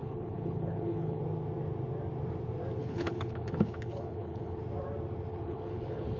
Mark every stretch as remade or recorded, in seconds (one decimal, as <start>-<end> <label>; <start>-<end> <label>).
0.0-1.2 remade; 1.2-2.8 recorded; 2.8-4.6 remade; 4.6-5.3 recorded; 5.3-6.2 remade